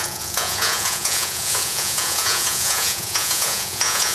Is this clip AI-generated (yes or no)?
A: yes